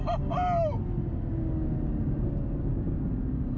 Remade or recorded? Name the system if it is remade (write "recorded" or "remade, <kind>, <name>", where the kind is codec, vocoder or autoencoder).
recorded